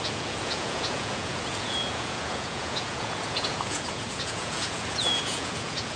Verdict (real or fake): fake